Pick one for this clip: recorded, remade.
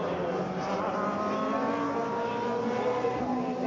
remade